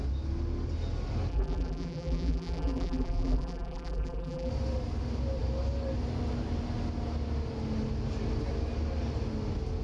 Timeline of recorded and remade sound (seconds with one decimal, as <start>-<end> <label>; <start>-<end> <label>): 0.0-1.3 recorded; 1.3-4.5 remade; 4.5-9.8 recorded